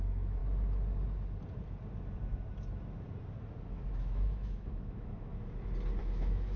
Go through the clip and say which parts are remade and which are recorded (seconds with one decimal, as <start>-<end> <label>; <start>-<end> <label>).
0.0-0.4 remade; 0.4-3.9 recorded; 3.9-5.3 remade; 5.3-6.0 recorded; 6.0-6.6 remade